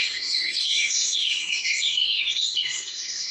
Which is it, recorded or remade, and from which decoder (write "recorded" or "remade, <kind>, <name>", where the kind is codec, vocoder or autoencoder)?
remade, codec, SNAC